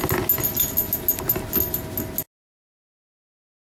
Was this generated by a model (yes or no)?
no